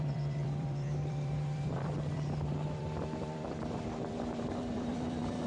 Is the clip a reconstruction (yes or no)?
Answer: yes